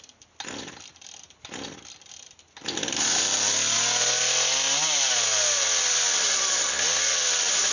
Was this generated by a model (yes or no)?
no